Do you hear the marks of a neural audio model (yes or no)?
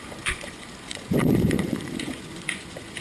yes